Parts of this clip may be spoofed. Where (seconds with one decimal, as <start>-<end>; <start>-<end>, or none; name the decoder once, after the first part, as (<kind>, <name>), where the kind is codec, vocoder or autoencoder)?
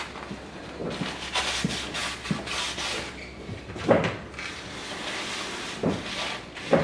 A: none